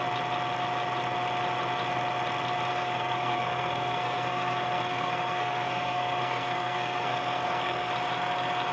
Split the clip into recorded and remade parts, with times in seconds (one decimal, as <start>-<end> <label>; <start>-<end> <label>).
0.0-2.7 recorded; 2.7-7.9 remade; 7.9-8.7 recorded